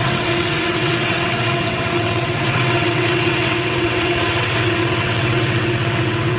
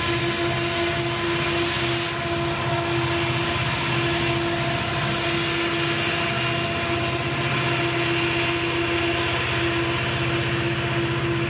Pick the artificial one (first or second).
first